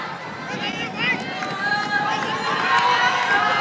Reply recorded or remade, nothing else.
recorded